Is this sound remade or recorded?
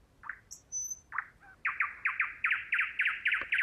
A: recorded